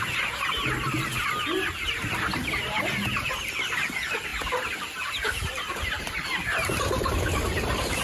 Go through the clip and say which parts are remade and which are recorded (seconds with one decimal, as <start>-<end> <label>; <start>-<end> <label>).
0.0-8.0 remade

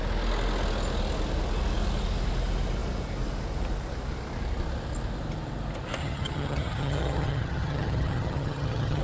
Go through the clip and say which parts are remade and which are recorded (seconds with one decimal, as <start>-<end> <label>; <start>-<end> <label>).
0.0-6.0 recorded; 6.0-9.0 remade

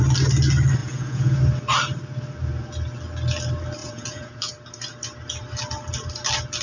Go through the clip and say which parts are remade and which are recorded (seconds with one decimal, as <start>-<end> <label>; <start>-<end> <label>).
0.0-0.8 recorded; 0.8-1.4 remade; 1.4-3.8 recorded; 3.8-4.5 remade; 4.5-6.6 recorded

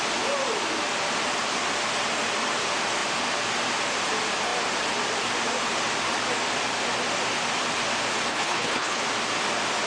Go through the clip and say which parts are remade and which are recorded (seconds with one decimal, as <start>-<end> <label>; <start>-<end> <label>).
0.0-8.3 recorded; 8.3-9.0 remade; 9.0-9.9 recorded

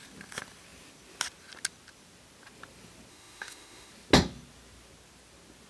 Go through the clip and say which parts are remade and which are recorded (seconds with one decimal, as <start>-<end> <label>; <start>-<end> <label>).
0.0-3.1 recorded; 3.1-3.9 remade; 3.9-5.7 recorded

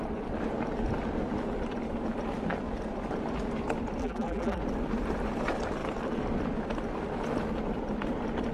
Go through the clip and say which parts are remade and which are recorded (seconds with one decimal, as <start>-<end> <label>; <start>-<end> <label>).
0.0-4.0 recorded; 4.0-4.6 remade; 4.6-8.5 recorded

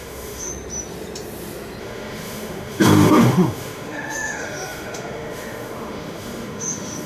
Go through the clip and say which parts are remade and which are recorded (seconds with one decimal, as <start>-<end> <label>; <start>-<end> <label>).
0.0-0.5 remade; 0.5-1.8 recorded; 1.8-7.1 remade